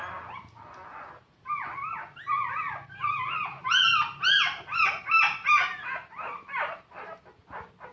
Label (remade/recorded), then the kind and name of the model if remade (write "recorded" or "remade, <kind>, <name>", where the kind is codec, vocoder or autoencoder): recorded